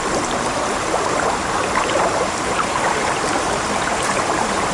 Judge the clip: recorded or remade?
remade